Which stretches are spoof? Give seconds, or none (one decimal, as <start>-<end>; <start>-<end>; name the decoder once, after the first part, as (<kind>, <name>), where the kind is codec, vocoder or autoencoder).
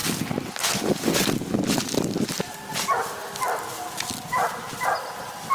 none